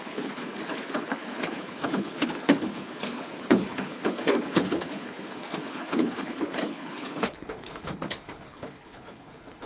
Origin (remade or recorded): remade